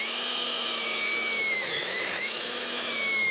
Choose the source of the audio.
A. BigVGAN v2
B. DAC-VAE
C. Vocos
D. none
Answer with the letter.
B